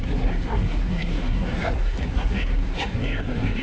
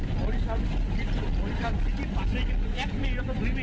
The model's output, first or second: first